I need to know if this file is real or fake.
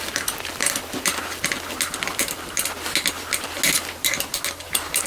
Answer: real